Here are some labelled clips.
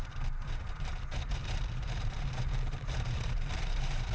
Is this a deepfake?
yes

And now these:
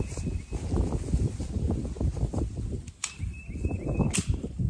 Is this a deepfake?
no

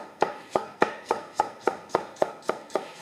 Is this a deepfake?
yes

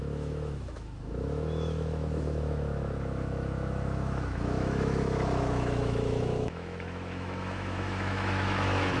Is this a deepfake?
yes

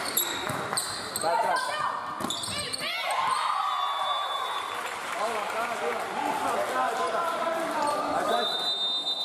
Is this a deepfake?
no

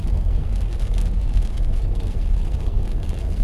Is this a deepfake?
yes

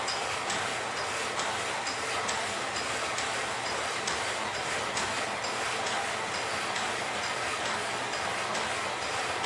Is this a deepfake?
no